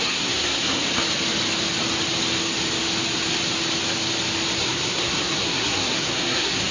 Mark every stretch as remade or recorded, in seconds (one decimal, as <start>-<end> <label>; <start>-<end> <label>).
0.0-0.9 remade; 0.9-4.6 recorded; 4.6-6.7 remade